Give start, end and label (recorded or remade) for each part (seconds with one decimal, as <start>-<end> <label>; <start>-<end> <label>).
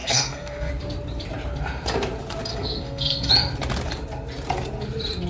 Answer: 0.0-0.7 remade; 0.7-2.5 recorded; 2.5-3.3 remade; 3.3-5.3 recorded